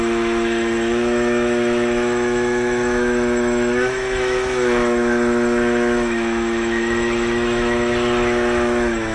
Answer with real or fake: fake